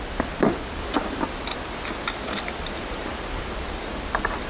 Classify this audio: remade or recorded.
recorded